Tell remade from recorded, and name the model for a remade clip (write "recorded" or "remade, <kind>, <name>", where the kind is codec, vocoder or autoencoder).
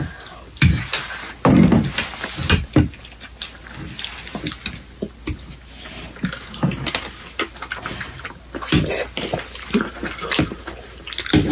recorded